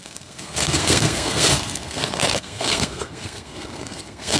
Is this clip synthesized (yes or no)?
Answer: yes